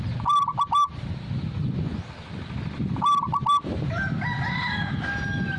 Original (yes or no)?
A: yes